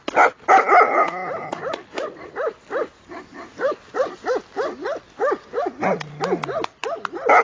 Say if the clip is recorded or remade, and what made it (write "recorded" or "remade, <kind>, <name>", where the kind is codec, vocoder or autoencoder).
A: recorded